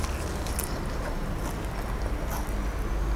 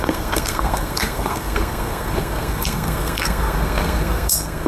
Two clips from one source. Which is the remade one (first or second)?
second